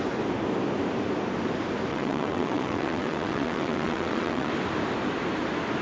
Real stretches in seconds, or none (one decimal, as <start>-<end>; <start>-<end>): 0.0-1.9; 4.5-5.8